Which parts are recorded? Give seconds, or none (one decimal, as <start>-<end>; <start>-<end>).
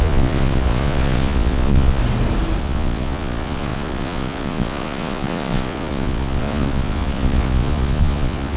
2.0-2.6